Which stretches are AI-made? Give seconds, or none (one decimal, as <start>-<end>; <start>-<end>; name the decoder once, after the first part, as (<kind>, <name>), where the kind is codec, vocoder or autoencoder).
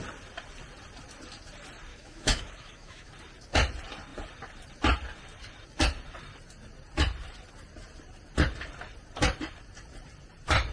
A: 1.9-3.1 (autoencoder, DAC-VAE)